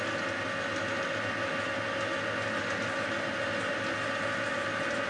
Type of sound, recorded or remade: recorded